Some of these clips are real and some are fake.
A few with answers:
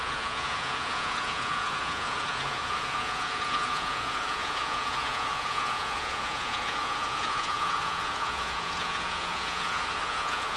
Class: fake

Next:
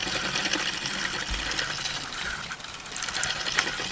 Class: fake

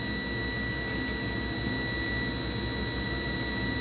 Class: real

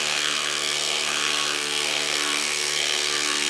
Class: fake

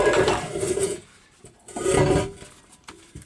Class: fake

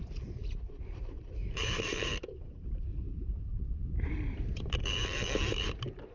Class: fake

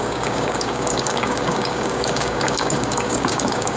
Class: fake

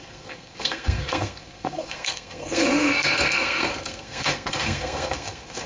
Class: fake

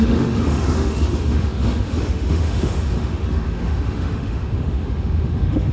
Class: fake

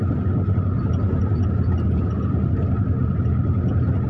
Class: real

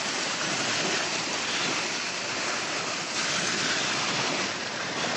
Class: real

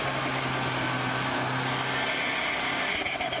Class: real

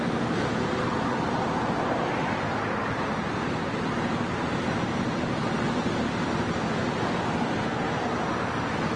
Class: real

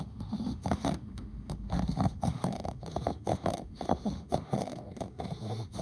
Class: fake